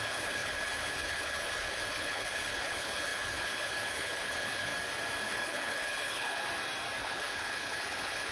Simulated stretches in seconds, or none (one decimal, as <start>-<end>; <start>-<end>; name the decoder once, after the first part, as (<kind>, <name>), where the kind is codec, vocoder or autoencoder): 0.0-4.7 (codec, HILCodec); 5.2-6.4; 7.0-8.3